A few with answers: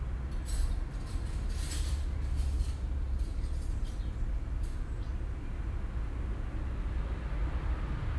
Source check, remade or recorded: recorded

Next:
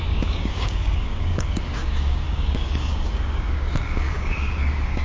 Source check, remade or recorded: remade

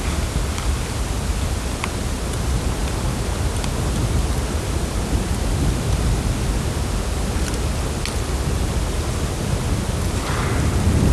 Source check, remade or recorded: recorded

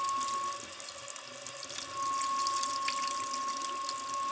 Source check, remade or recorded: recorded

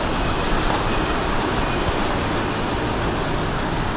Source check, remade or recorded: recorded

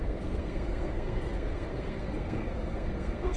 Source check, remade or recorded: remade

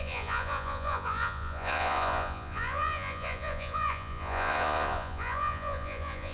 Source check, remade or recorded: remade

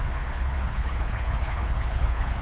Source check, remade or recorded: remade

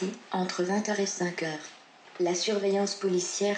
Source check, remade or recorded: recorded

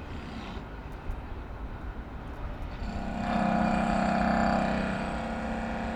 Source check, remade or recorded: recorded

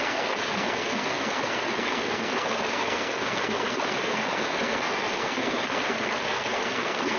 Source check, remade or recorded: remade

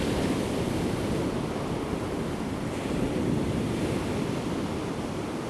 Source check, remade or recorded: recorded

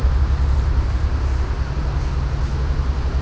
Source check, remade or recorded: recorded